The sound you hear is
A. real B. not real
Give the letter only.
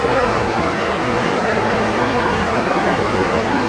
B